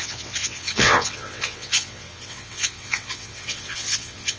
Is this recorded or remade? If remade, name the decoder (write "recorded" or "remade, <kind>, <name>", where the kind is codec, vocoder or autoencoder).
remade, vocoder, WaveNeXt